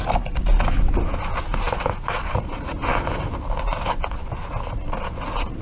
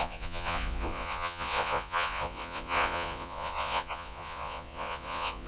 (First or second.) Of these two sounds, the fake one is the second